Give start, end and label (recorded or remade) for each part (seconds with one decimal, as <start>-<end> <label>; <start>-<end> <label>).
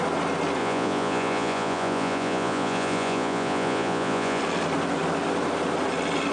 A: 0.0-0.6 recorded; 0.6-4.4 remade; 4.4-6.3 recorded